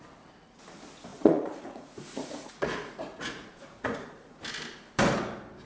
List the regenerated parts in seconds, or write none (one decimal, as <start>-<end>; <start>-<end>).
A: 1.1-4.4